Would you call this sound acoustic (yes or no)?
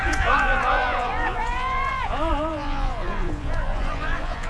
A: no